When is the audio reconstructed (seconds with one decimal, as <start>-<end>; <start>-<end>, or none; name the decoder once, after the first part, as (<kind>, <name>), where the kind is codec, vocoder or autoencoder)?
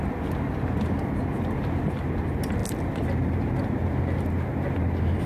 none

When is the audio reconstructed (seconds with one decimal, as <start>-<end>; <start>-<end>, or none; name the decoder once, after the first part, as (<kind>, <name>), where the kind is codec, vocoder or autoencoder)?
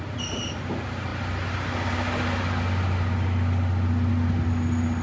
none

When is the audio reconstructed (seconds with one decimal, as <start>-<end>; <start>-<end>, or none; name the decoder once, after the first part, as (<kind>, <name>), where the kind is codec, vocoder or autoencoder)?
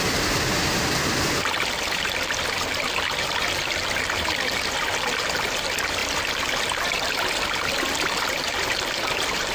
none